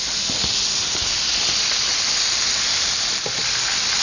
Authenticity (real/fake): real